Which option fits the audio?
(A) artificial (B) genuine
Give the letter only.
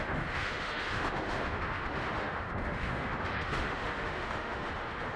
A